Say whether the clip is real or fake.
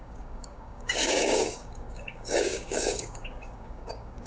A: fake